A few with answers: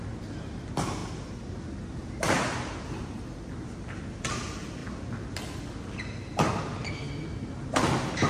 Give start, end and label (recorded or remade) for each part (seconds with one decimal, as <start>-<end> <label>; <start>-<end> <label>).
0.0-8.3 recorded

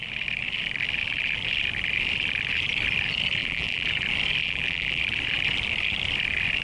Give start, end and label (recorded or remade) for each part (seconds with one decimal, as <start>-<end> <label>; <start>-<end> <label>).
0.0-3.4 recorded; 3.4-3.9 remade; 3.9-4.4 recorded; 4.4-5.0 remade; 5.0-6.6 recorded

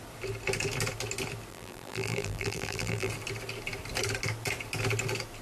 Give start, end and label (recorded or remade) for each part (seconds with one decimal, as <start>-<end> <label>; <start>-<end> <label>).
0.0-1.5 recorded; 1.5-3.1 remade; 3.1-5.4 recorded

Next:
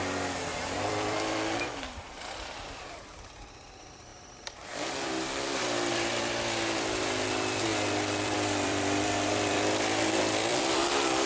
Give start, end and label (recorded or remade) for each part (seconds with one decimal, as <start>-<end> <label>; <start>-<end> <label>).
0.0-0.6 recorded; 0.6-11.3 remade

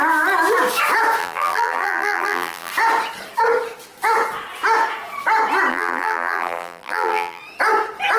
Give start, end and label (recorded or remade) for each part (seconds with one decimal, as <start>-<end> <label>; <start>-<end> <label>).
0.0-1.2 recorded; 1.2-2.7 remade; 2.7-5.7 recorded; 5.7-7.4 remade; 7.4-8.2 recorded

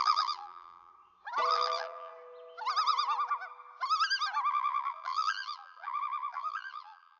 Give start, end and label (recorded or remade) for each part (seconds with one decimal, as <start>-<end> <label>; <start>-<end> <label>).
0.0-0.9 remade; 0.9-1.5 recorded; 1.5-2.1 remade; 2.1-4.5 recorded; 4.5-7.2 remade

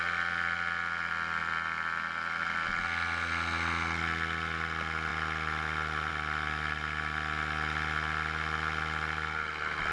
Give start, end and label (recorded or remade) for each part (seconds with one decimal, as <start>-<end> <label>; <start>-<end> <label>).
0.0-9.9 recorded